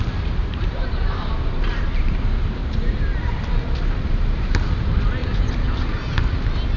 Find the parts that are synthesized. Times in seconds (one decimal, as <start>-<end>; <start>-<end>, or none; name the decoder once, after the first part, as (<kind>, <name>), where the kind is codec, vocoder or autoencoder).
0.4-2.2 (vocoder, BigVGAN v2); 2.6-3.4